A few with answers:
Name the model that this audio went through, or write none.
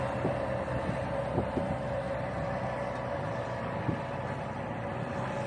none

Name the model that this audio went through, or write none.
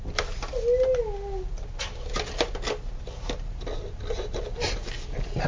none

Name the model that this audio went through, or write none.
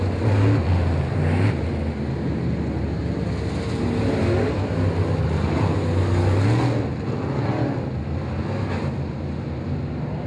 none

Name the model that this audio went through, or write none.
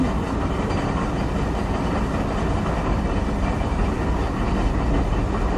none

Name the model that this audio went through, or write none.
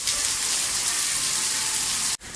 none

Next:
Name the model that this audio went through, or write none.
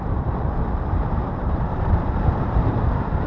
vocoder, BigVGAN v2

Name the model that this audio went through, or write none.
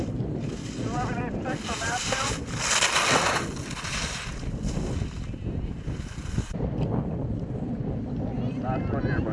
none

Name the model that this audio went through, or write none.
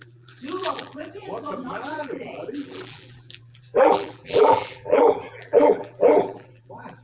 vocoder, BigVGAN v2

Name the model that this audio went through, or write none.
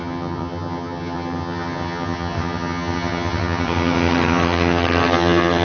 vocoder, HiFi-GAN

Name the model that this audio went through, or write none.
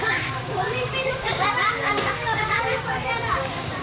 codec, DAC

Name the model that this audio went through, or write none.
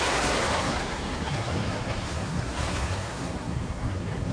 codec, SNAC